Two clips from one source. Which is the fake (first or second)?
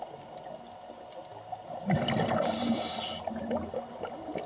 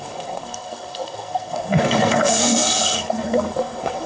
second